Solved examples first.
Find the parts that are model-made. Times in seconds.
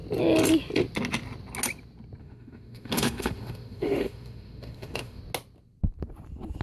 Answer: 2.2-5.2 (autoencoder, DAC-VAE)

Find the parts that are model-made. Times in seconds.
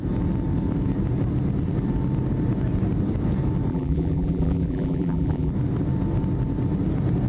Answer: 3.7-5.5 (vocoder, BigVGAN v2)